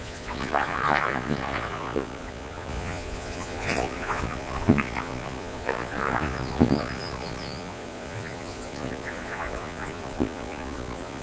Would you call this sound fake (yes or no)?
yes